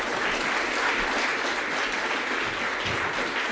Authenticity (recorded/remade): recorded